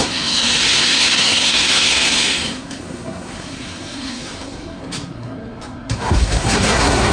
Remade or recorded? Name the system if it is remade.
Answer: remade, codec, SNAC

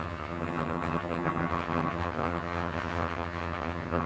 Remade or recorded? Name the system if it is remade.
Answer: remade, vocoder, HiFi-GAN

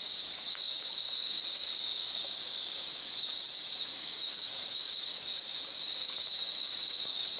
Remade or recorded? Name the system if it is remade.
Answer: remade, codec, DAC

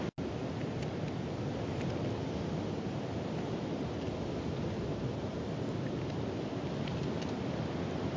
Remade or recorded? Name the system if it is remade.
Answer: recorded